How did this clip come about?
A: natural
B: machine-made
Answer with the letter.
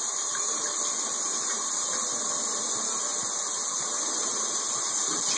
A